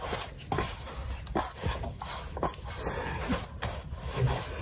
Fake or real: real